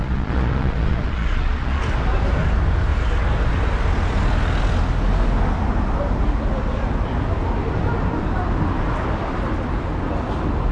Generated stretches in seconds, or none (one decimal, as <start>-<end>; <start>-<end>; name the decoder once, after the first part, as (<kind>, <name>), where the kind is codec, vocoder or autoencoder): 0.0-1.8 (vocoder, Vocos)

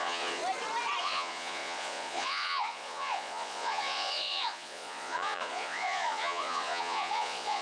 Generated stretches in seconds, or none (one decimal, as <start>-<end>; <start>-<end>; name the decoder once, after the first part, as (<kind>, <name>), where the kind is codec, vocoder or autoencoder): 0.0-0.4 (vocoder, Vocos); 1.0-7.6

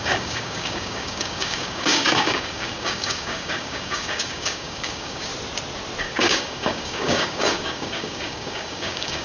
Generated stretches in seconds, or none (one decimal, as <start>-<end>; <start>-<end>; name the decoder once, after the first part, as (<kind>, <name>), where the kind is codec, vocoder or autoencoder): 0.0-5.3 (codec, DAC); 6.0-9.2